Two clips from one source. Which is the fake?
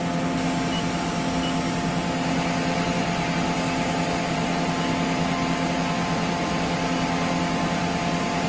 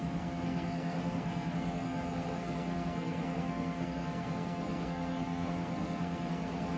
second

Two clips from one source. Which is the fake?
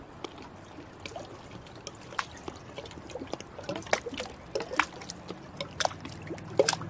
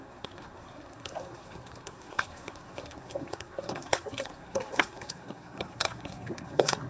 second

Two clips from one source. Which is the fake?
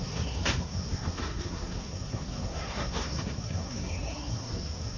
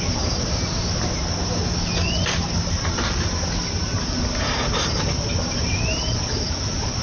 first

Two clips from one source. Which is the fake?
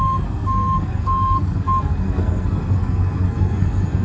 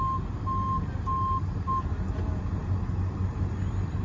first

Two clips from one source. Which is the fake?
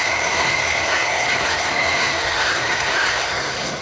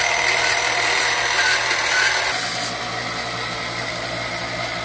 first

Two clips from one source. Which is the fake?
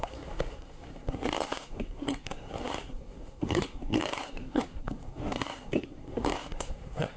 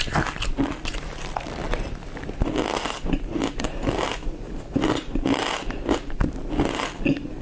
first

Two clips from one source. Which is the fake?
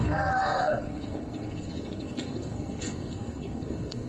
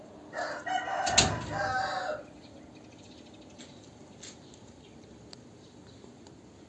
first